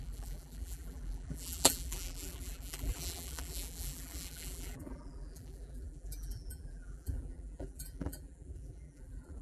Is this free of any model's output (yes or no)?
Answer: no